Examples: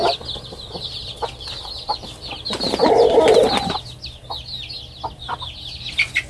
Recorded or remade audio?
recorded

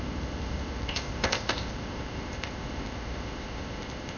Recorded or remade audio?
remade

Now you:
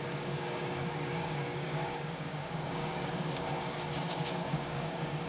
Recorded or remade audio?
remade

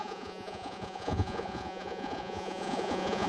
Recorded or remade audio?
remade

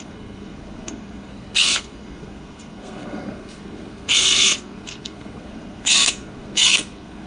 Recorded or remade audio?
remade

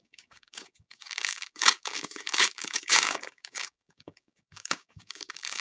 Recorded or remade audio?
remade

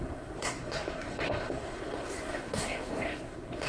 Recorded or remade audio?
remade